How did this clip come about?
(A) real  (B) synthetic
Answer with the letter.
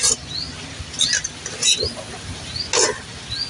A